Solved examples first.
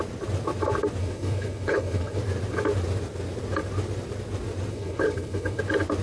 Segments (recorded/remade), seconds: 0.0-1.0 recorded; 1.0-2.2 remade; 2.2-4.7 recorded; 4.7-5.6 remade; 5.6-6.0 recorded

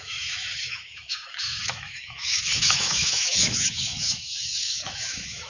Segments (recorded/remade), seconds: 0.0-5.5 remade